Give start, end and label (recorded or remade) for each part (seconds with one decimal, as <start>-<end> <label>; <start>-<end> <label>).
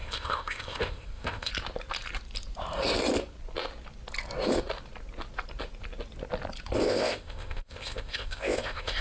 0.0-1.5 remade; 1.5-6.8 recorded; 6.8-9.0 remade